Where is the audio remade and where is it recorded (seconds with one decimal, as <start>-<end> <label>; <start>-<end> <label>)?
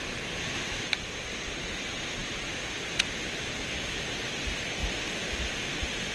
0.0-2.2 recorded; 2.2-3.6 remade; 3.6-4.8 recorded; 4.8-5.4 remade; 5.4-6.1 recorded